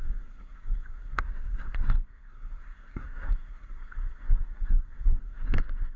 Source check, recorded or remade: remade